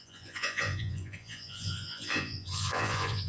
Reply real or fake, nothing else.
fake